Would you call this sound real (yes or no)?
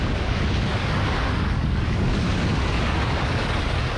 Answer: no